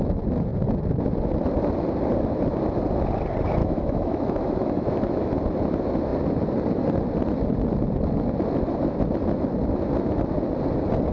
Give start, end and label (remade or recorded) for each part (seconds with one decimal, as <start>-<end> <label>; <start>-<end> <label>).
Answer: 0.0-3.6 recorded; 3.6-5.3 remade; 5.3-11.1 recorded